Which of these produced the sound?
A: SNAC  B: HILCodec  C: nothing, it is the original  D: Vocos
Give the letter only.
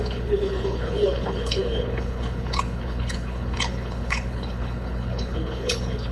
B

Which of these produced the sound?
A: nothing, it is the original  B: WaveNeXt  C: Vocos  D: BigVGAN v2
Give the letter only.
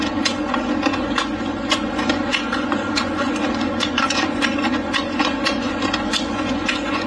C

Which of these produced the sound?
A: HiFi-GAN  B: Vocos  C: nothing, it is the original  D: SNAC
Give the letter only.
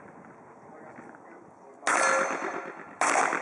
C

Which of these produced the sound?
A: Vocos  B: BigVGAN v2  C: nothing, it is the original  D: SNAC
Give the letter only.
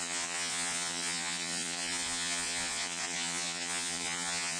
A